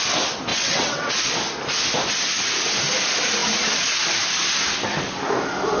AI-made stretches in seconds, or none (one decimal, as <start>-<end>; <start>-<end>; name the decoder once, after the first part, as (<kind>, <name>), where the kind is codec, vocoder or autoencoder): 0.5-1.1 (vocoder, WaveNeXt)